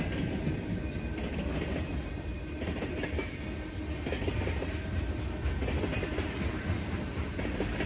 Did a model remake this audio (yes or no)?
no